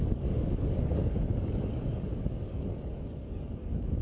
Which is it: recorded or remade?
remade